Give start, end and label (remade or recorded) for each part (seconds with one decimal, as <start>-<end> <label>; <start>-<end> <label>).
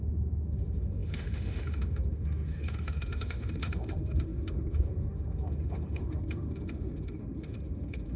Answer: 0.0-8.2 remade